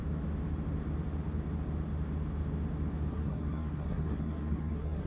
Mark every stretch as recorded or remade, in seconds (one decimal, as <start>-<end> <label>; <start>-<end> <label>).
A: 0.0-3.1 recorded; 3.1-5.1 remade